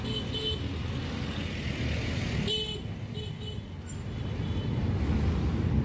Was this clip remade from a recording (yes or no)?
no